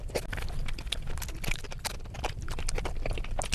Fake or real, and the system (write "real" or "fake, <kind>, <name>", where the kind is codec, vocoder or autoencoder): real